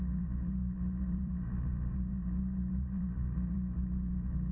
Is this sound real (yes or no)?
no